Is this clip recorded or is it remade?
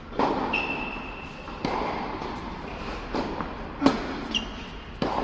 recorded